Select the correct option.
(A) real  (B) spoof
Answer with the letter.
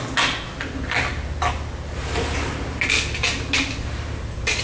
A